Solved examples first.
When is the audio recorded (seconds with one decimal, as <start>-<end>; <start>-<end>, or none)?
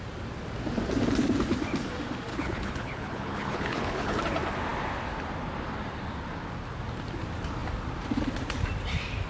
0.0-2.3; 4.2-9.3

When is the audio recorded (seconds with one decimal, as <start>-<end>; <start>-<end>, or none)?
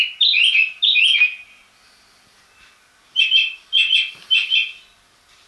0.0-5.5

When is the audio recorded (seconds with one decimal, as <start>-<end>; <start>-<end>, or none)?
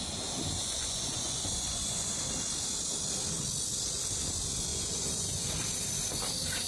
0.0-0.6; 2.2-4.7; 5.5-6.7